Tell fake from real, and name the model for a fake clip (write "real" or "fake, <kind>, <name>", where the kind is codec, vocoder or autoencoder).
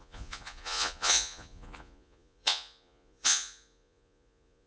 fake, vocoder, Vocos